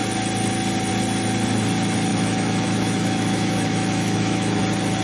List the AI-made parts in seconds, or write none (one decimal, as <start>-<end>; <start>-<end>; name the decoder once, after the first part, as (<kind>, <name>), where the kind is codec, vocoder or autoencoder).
2.1-4.6 (autoencoder, DAC-VAE)